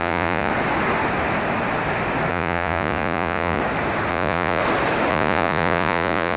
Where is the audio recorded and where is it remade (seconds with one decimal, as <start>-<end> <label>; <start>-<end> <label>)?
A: 0.0-0.5 remade; 0.5-2.3 recorded; 2.3-3.6 remade; 3.6-4.1 recorded; 4.1-4.6 remade; 4.6-5.1 recorded; 5.1-6.4 remade